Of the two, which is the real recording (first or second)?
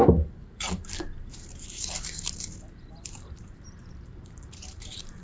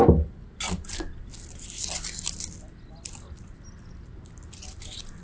second